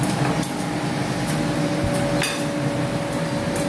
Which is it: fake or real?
real